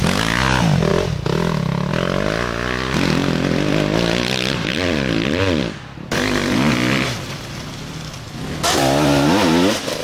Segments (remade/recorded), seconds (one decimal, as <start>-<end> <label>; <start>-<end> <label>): 0.0-3.2 recorded; 3.2-3.7 remade; 3.7-4.7 recorded; 4.7-8.8 remade; 8.8-10.0 recorded